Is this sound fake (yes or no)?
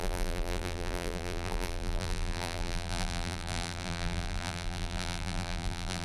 yes